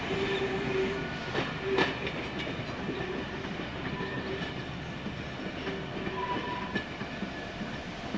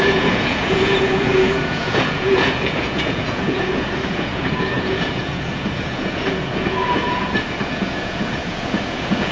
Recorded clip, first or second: first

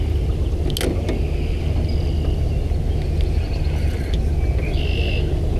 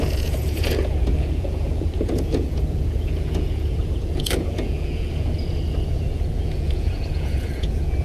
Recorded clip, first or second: first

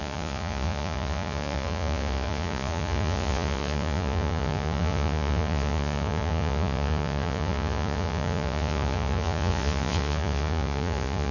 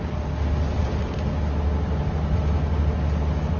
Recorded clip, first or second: second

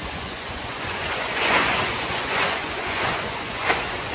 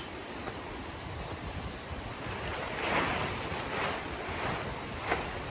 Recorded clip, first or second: second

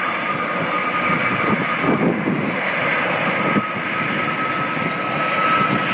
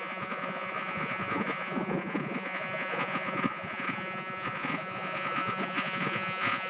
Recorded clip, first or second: first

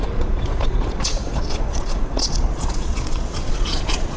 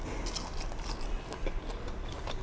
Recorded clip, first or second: second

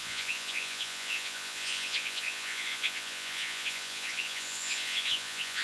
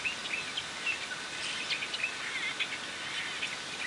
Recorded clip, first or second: second